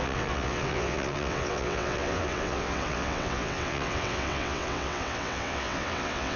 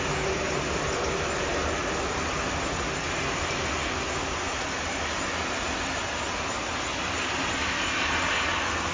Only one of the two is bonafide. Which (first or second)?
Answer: second